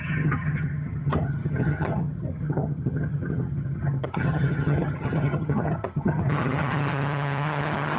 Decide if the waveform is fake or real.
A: fake